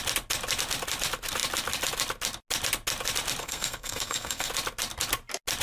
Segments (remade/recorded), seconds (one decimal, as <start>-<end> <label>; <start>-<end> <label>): 0.0-3.4 recorded; 3.4-4.5 remade; 4.5-5.6 recorded